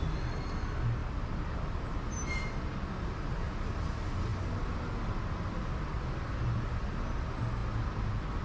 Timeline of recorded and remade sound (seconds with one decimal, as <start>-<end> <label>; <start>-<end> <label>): 0.0-8.4 recorded